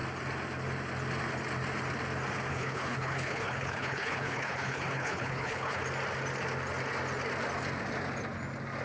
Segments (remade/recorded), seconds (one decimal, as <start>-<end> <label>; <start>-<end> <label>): 0.0-2.5 recorded; 2.5-5.8 remade; 5.8-8.8 recorded